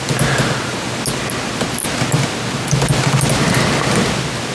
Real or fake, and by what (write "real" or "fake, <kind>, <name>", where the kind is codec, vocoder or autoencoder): real